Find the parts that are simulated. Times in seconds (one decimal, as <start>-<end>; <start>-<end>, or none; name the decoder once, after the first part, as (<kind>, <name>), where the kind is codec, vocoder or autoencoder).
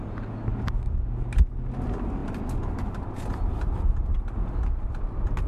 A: none